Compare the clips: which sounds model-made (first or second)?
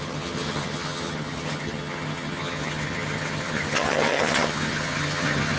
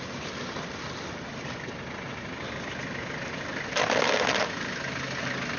first